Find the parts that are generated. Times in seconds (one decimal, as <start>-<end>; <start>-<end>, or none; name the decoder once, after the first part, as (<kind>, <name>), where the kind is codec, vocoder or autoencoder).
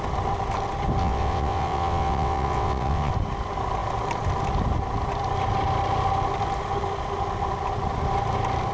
1.0-3.1 (vocoder, WaveNeXt)